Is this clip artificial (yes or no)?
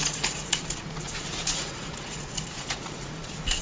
yes